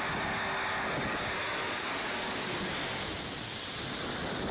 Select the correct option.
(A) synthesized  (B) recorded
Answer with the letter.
B